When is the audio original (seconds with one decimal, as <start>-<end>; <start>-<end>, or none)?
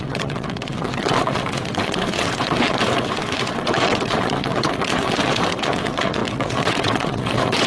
none